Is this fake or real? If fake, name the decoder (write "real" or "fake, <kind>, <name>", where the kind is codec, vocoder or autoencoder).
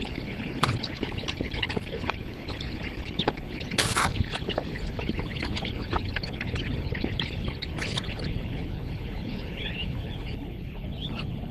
fake, codec, HILCodec